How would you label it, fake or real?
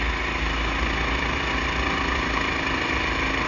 real